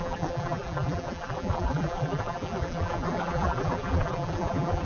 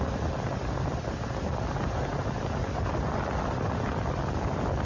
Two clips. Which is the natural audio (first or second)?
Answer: second